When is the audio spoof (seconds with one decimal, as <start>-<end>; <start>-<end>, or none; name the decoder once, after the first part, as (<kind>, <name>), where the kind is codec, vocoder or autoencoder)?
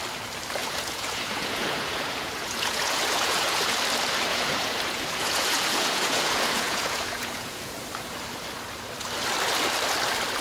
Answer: 0.6-3.7 (vocoder, Vocos); 4.3-7.7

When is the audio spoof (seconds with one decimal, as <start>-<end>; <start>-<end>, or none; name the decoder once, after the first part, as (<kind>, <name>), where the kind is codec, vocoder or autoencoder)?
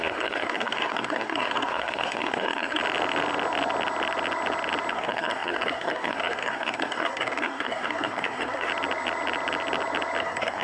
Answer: 0.0-2.8 (codec, SNAC); 4.9-8.7; 10.2-10.6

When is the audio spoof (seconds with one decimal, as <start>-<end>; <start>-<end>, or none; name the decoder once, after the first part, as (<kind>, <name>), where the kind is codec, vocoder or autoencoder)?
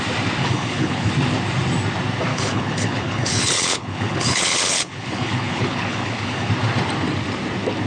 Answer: 0.4-1.1 (codec, HILCodec); 2.3-6.5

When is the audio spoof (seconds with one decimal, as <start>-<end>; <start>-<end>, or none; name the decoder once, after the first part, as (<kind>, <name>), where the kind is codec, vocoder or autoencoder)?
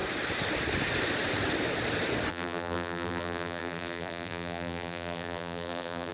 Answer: 2.3-6.1 (vocoder, BigVGAN v2)